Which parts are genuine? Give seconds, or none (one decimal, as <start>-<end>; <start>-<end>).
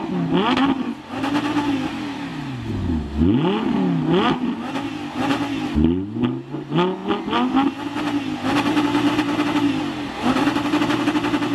0.0-11.5